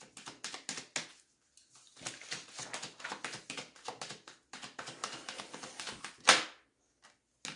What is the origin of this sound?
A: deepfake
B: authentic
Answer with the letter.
B